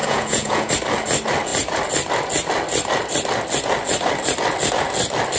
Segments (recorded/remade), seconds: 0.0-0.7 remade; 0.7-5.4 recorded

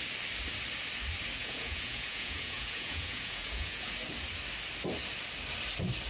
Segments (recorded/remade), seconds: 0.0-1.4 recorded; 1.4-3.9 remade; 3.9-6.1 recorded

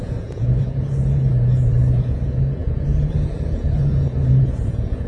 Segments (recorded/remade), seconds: 0.0-5.1 remade

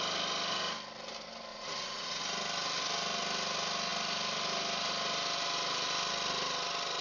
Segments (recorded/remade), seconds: 0.0-1.5 recorded; 1.5-2.2 remade; 2.2-7.0 recorded